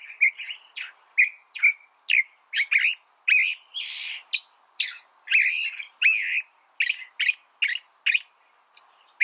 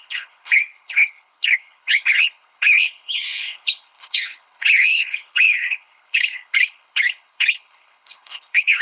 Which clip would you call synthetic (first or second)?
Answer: second